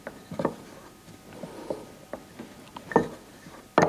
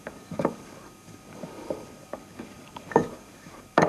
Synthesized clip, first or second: second